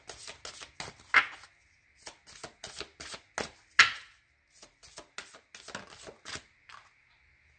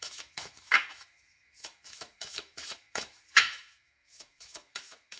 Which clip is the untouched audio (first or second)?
first